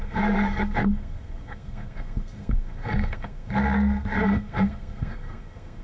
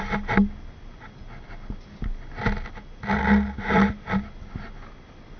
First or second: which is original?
second